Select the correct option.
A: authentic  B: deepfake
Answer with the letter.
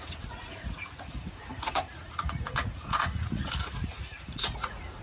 B